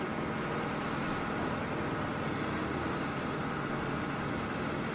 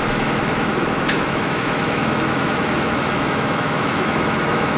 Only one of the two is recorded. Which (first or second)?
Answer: first